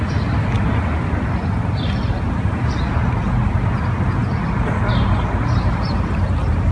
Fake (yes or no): no